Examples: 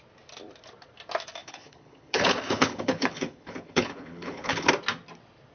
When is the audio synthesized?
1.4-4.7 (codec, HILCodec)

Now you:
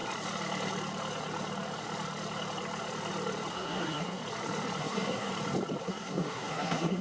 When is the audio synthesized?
3.5-4.2 (codec, SNAC); 4.8-5.3; 5.8-7.0